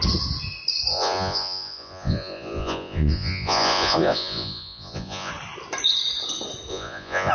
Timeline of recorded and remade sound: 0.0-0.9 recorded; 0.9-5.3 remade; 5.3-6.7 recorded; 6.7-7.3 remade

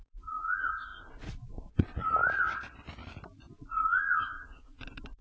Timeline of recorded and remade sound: 0.0-2.2 remade; 2.2-3.6 recorded; 3.6-5.2 remade

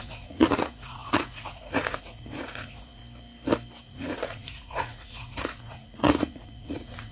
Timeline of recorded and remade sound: 0.0-3.0 remade; 3.0-3.8 recorded; 3.8-7.1 remade

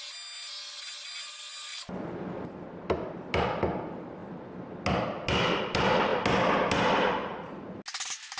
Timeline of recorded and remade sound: 0.0-7.2 recorded; 7.2-7.8 remade; 7.8-8.4 recorded

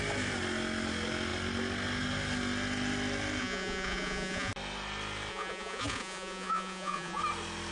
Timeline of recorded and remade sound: 0.0-3.4 recorded; 3.4-4.5 remade; 4.5-5.3 recorded; 5.3-7.2 remade; 7.2-7.7 recorded

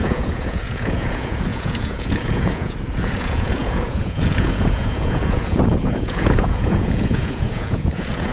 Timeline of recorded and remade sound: 0.0-8.3 remade

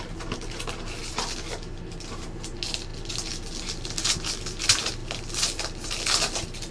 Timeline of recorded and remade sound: 0.0-6.7 recorded